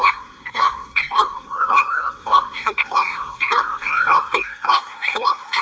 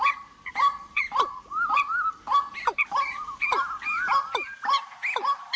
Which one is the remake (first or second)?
first